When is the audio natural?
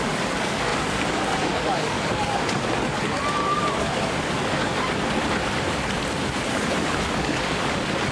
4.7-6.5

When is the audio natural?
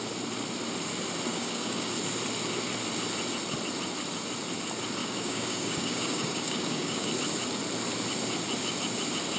0.0-1.3; 1.9-5.0; 7.1-9.4